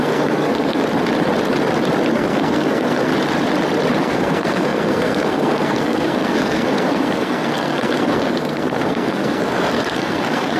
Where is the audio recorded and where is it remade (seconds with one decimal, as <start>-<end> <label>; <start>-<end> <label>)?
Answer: 0.0-0.8 remade; 0.8-2.1 recorded; 2.1-3.1 remade; 3.1-4.0 recorded; 4.0-10.6 remade